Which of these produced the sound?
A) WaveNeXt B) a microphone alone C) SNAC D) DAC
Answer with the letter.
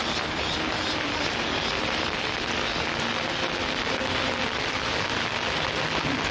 B